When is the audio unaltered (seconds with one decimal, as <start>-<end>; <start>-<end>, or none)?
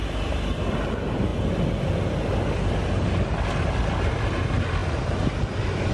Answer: 0.0-5.9